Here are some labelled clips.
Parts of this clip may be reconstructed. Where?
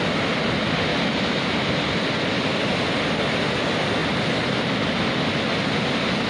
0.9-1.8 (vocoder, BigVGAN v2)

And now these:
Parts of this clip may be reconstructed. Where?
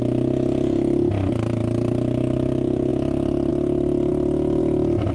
none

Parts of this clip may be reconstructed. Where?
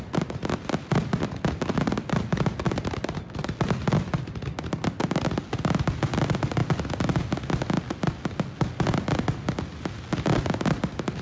none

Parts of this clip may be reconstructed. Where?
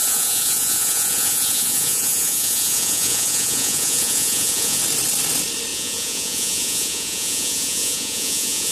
0.0-4.8 (vocoder, Vocos); 5.7-8.7